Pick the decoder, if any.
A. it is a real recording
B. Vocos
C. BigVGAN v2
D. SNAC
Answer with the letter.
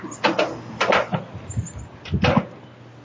A